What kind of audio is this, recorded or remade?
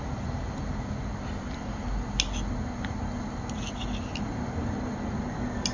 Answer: recorded